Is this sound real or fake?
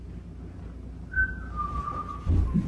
real